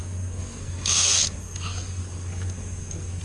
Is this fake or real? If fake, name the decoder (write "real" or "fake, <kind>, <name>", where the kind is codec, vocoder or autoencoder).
fake, codec, SNAC